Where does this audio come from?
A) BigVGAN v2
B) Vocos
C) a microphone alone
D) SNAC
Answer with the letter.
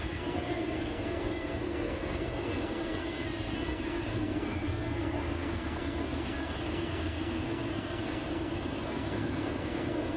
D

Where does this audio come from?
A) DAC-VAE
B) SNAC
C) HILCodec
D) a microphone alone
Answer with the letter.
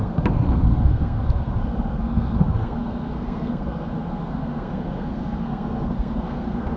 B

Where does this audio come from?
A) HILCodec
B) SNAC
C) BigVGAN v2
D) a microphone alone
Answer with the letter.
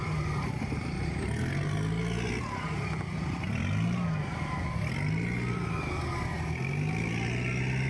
D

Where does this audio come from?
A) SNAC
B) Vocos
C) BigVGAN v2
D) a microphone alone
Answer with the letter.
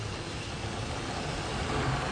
D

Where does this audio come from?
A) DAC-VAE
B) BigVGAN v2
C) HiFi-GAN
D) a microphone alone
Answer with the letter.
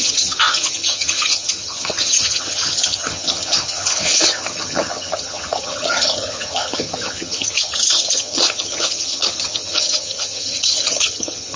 C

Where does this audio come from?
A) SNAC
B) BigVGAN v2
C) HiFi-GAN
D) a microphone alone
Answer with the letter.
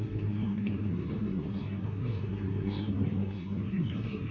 A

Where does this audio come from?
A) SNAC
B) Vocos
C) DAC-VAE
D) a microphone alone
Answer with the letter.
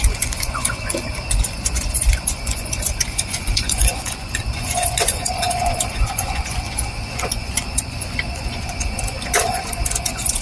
B